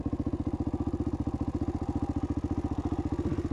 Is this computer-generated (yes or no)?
no